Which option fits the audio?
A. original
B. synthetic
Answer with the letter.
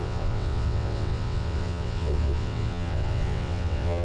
B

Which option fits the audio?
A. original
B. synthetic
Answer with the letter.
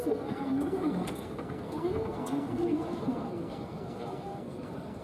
B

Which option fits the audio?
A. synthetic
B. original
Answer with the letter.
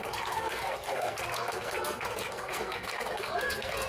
A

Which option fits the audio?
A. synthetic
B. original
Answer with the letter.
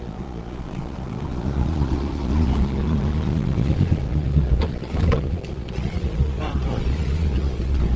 A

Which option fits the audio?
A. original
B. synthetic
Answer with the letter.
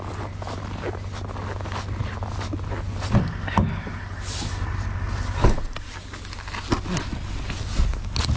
A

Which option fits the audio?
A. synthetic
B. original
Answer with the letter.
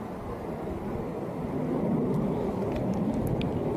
B